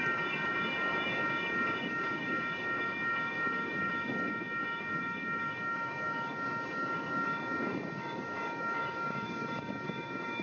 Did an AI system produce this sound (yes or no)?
yes